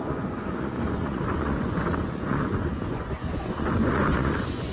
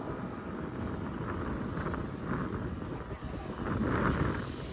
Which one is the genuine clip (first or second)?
second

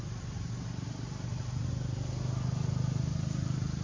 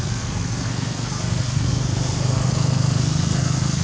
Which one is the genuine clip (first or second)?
first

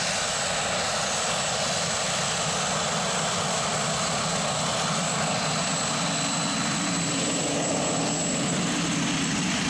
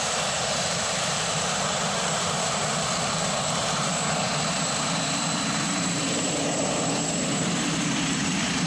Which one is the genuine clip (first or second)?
first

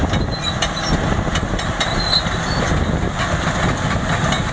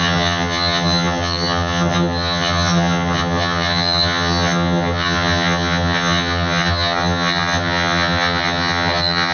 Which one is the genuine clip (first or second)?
first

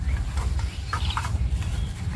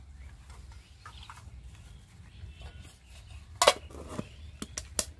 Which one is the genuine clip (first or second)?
second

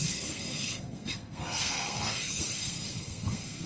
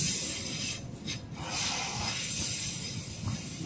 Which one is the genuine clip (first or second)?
second